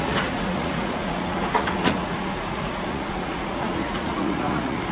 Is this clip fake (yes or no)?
yes